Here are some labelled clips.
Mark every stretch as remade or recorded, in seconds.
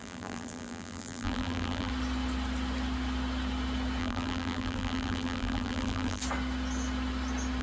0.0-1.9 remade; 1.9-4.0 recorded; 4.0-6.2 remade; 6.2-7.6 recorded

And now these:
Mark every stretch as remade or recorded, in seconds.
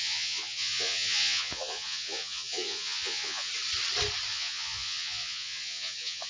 0.0-3.5 remade; 3.5-4.3 recorded; 4.3-6.3 remade